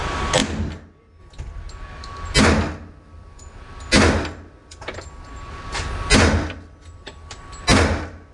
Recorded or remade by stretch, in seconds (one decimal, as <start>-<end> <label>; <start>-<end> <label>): 0.0-8.3 recorded